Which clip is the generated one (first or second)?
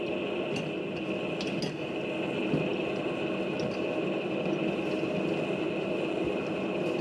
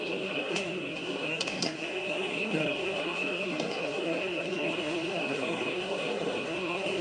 second